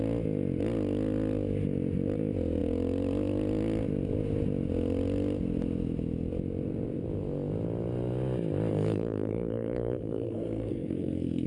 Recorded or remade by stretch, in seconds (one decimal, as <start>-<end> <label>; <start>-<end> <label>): 0.0-8.7 recorded; 8.7-11.5 remade